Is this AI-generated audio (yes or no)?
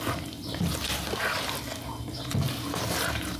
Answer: no